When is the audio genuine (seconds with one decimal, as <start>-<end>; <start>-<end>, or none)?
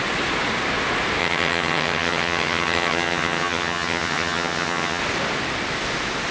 0.0-1.2; 5.0-6.3